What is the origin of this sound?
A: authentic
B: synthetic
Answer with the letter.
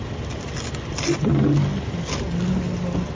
A